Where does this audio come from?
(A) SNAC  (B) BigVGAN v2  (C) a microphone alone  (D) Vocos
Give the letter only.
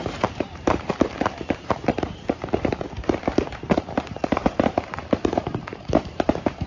B